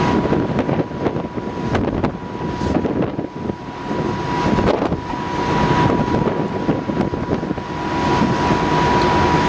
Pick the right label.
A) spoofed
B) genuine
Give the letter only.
B